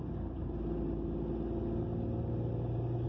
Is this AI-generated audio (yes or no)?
no